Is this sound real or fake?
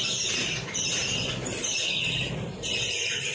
real